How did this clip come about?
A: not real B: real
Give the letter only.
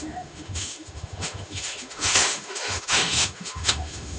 A